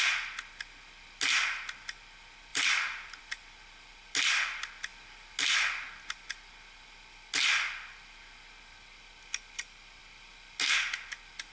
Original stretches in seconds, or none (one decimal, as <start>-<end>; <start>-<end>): 0.0-2.5; 3.2-11.5